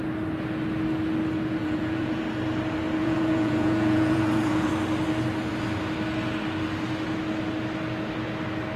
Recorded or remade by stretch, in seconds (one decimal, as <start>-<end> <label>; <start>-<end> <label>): 0.0-1.6 recorded; 1.6-2.2 remade; 2.2-3.0 recorded; 3.0-4.7 remade; 4.7-8.8 recorded